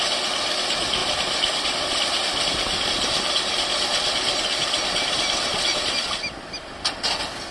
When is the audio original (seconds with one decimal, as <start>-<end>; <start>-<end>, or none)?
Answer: 0.0-1.0; 2.9-7.5